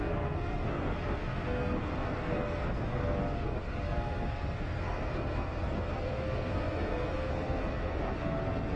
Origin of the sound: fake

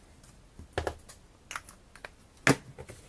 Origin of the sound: real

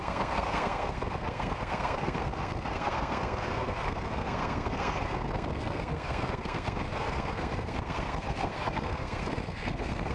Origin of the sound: fake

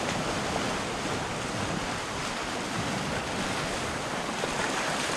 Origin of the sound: real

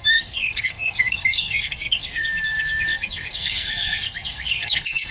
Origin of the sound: fake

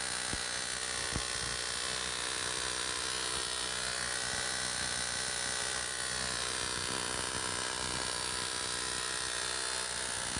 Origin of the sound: real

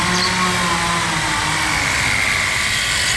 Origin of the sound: real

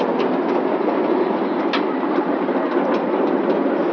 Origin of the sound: real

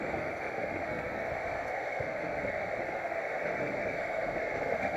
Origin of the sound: fake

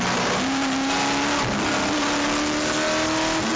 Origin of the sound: real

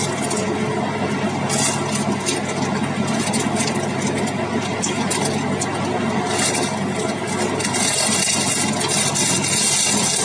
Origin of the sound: real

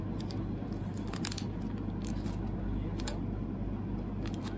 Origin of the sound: real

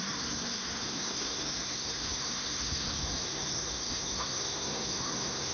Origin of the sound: fake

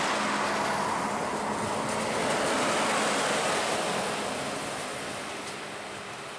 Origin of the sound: real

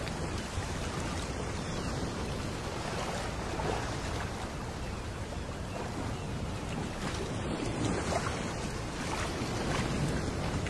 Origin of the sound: real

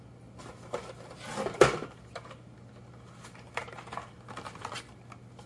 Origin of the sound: real